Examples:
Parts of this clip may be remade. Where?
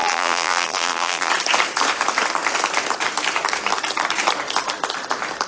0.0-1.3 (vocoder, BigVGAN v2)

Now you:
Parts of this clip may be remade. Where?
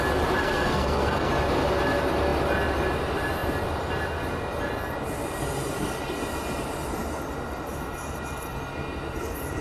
0.4-1.3 (codec, SNAC)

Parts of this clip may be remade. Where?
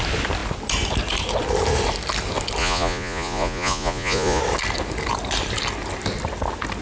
2.6-4.4 (vocoder, Vocos)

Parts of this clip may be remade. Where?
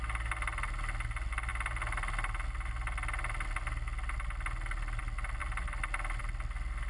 none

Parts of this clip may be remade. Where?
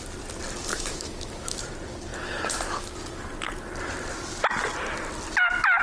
0.7-1.6 (autoencoder, DAC-VAE)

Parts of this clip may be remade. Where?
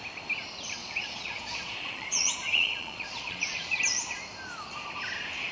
0.8-3.8 (vocoder, Vocos)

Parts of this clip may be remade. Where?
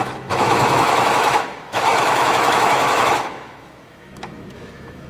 0.0-5.1 (autoencoder, DAC-VAE)